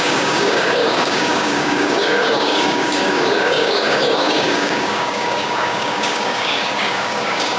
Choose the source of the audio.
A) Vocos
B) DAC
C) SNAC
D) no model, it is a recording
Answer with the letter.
B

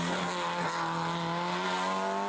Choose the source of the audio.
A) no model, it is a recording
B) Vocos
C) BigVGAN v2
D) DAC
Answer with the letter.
A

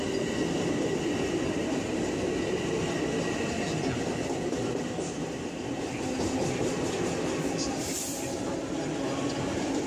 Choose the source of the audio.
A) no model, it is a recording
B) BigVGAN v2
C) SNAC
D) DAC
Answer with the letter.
A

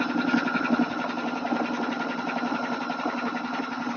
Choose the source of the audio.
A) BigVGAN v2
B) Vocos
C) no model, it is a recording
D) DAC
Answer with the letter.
C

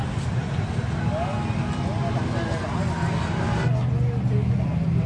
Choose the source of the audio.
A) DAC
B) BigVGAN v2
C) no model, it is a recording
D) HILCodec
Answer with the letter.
C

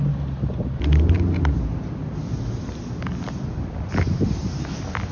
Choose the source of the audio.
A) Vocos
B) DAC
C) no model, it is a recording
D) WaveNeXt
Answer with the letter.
C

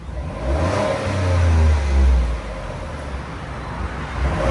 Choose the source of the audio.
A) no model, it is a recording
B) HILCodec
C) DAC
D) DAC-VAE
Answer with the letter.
A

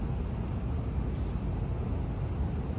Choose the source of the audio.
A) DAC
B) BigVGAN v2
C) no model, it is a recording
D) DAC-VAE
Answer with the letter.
C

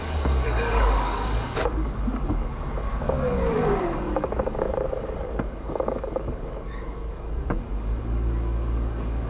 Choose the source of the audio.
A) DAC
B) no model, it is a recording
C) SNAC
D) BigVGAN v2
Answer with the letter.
A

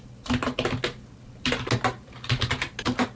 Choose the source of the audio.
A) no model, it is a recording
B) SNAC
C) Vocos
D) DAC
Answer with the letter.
A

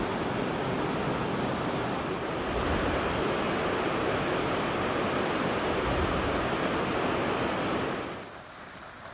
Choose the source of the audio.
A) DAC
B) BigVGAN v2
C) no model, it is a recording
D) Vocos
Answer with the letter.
C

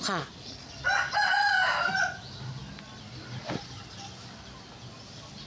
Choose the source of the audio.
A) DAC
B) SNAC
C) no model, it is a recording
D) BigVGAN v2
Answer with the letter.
C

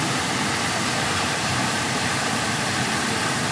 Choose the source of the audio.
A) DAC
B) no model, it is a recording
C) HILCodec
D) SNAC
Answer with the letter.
B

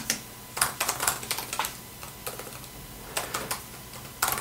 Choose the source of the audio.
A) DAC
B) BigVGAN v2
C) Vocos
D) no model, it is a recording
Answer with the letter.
D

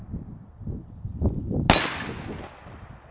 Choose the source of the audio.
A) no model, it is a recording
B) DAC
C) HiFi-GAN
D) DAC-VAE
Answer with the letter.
A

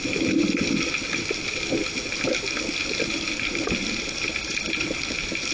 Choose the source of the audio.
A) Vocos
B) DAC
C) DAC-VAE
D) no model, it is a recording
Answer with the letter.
D